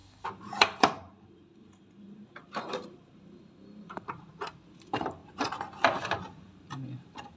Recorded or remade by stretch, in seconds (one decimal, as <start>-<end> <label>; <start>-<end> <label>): 0.0-5.2 remade; 5.2-6.4 recorded; 6.4-7.4 remade